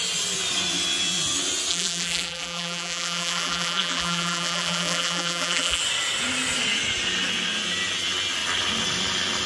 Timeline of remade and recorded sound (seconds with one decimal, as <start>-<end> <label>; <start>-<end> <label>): 0.0-1.7 recorded; 1.7-5.8 remade; 5.8-9.5 recorded